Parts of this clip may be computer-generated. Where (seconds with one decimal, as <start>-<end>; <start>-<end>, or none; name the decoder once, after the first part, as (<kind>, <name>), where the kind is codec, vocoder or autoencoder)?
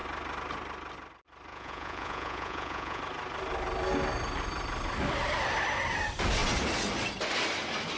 1.5-3.0 (vocoder, Vocos)